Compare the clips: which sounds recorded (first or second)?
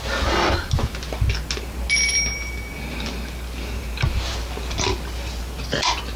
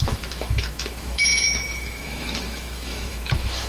first